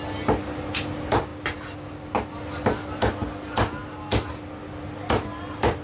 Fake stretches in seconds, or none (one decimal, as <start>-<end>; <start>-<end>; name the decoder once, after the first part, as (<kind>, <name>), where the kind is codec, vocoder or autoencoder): none